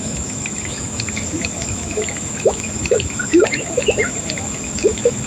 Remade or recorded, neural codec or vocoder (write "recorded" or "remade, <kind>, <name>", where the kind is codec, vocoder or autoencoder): remade, autoencoder, DAC-VAE